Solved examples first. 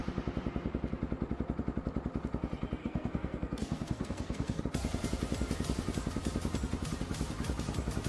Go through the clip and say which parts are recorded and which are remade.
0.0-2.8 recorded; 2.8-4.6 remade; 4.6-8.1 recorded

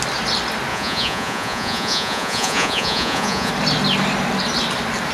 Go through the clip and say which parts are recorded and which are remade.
0.0-0.7 recorded; 0.7-3.5 remade; 3.5-5.1 recorded

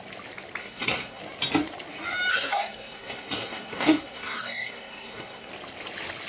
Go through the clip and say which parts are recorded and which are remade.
0.0-0.6 recorded; 0.6-1.2 remade; 1.2-2.3 recorded; 2.3-5.5 remade; 5.5-6.3 recorded

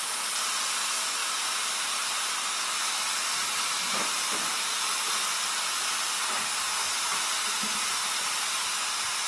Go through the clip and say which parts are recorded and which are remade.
0.0-9.3 recorded

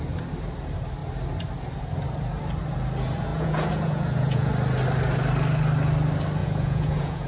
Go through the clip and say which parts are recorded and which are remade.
0.0-3.3 recorded; 3.3-4.5 remade; 4.5-6.4 recorded; 6.4-7.3 remade

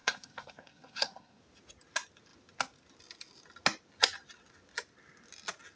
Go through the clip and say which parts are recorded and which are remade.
0.0-1.4 remade; 1.4-5.8 recorded